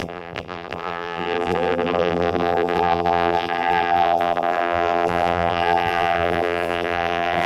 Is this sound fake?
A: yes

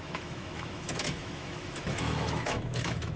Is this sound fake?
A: yes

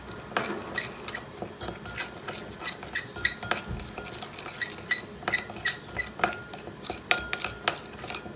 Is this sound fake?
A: no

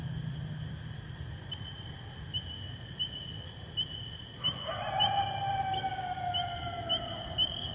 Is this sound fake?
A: no